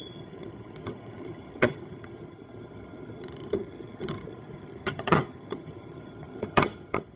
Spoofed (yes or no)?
yes